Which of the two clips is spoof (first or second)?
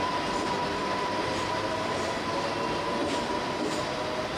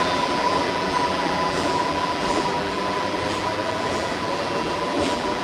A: second